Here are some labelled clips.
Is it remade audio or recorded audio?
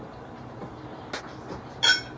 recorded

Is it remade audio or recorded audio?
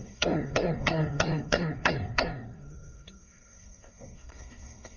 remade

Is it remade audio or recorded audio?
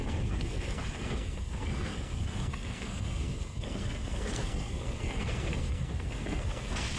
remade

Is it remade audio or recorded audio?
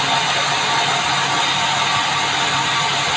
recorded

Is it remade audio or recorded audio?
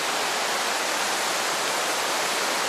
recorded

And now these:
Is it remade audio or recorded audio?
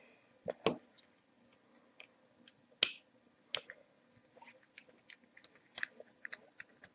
recorded